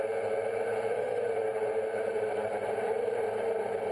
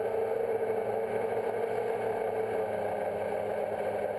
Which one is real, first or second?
second